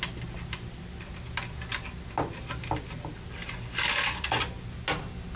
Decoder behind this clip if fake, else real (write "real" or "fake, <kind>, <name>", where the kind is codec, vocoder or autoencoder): real